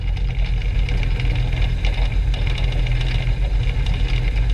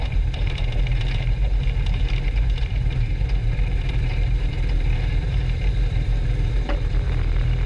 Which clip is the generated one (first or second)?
second